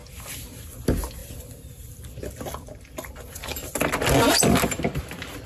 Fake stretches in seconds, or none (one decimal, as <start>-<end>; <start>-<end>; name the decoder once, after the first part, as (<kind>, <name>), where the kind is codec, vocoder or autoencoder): none